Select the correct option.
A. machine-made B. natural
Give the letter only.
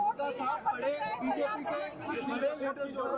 B